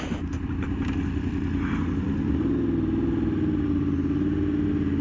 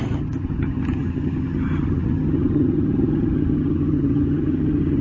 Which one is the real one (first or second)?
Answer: first